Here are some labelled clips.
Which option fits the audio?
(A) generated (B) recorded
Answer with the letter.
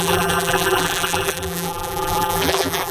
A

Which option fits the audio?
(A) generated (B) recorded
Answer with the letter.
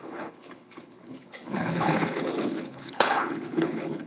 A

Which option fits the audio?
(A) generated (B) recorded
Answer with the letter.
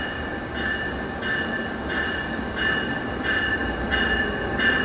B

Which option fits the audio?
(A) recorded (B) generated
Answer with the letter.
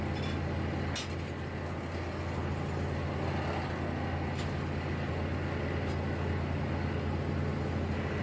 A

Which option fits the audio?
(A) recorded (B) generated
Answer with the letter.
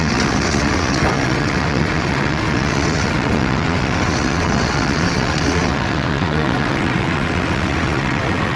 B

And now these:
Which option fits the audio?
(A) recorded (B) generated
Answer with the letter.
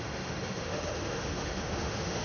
B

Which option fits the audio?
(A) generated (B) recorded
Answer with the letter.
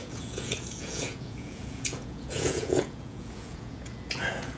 A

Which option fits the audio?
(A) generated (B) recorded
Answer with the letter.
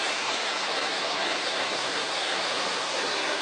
A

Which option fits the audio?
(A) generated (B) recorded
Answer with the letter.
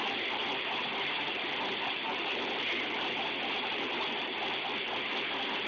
B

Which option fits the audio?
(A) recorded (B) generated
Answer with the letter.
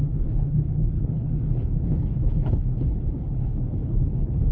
B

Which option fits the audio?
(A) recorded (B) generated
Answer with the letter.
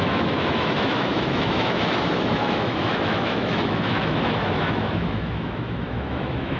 B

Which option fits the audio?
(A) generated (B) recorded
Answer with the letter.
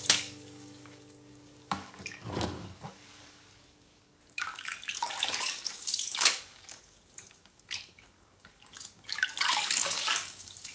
A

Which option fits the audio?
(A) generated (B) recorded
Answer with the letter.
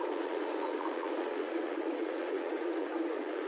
A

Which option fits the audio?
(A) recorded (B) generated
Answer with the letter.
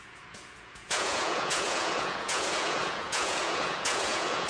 B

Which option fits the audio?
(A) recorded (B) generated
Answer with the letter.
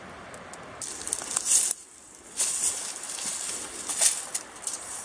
A